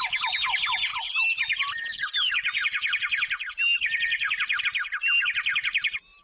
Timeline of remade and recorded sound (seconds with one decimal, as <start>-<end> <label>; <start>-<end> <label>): 0.0-0.9 recorded; 0.9-4.6 remade; 4.6-6.2 recorded